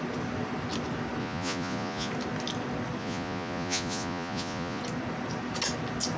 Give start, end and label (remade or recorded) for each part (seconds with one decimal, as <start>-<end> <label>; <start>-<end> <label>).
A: 0.0-1.2 recorded; 1.2-2.1 remade; 2.1-3.0 recorded; 3.0-4.8 remade; 4.8-6.2 recorded